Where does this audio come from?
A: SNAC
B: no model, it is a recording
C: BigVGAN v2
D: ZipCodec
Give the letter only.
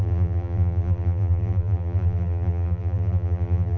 C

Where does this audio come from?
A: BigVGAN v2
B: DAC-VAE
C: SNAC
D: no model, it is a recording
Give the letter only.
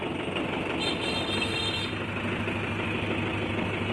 D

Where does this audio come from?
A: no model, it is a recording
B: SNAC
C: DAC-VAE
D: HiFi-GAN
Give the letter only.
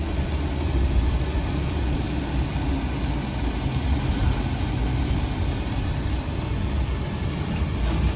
A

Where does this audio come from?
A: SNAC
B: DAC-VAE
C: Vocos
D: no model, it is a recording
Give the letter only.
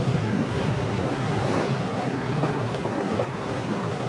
A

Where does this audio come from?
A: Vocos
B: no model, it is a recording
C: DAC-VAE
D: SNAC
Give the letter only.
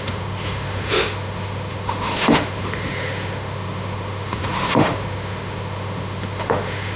C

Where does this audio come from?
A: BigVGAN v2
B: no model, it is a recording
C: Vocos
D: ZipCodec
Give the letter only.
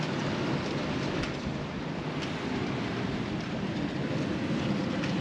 B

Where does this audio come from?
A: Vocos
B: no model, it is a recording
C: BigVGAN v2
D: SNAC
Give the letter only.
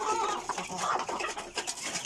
B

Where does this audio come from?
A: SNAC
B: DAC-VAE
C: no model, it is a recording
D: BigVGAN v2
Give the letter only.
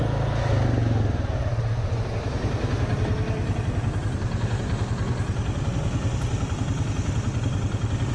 C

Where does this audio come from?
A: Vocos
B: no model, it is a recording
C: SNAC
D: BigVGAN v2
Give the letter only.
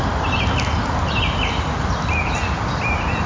B